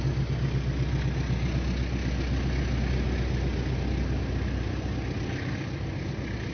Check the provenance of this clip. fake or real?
real